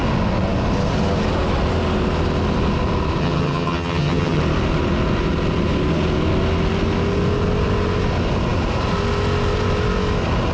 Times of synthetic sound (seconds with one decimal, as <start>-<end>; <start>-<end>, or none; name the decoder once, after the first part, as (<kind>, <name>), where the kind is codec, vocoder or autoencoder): 3.2-4.4 (vocoder, HiFi-GAN)